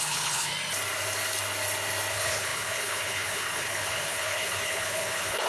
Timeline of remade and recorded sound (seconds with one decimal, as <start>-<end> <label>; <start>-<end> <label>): 0.0-0.5 remade; 0.5-2.1 recorded; 2.1-5.5 remade